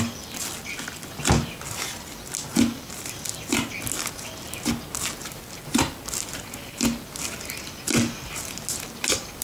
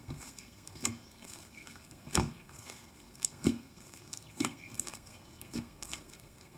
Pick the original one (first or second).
first